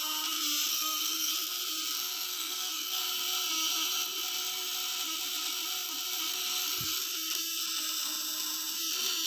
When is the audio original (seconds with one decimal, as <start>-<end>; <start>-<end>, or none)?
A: 0.0-0.7; 1.3-2.3; 3.0-9.3